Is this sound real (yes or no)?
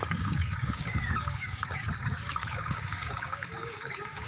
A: no